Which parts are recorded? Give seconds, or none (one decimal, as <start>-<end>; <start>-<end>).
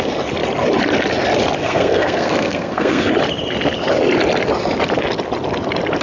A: 0.0-1.6; 3.1-6.0